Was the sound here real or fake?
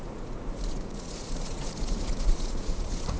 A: fake